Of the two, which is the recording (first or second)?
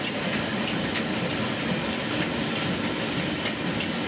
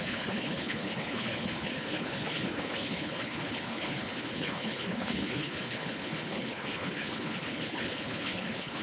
first